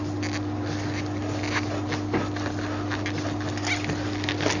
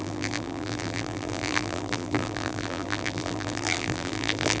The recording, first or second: first